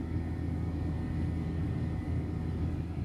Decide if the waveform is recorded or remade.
remade